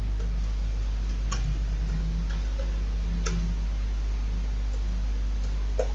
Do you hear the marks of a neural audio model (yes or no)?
no